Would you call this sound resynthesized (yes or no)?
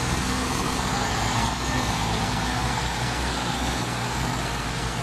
yes